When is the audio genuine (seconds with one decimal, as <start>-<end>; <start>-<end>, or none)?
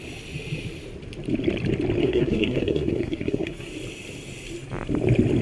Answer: 0.0-2.0; 3.7-5.4